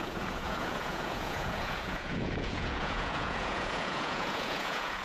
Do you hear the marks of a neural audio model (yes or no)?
yes